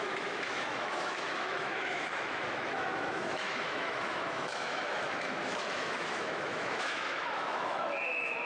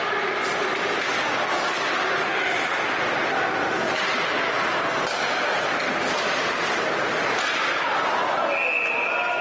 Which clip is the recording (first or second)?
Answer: second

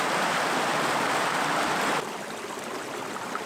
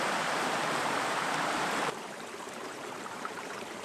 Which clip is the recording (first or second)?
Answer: first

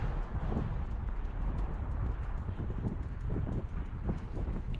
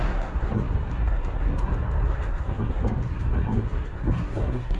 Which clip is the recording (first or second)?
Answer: first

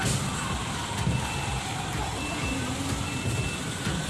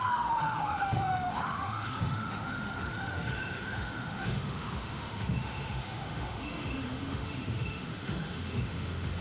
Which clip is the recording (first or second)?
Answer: first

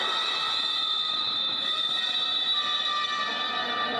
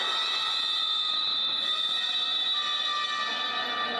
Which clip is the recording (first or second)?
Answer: second